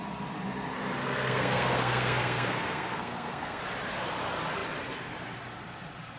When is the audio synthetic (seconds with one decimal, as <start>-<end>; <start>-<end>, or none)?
1.0-3.6